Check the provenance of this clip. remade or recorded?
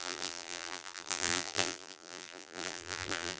remade